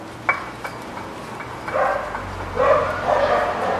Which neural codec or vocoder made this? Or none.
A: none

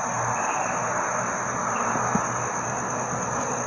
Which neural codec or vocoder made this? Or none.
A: none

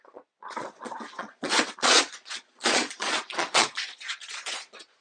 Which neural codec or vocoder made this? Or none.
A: vocoder, Vocos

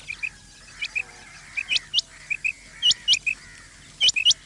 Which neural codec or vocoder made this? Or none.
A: none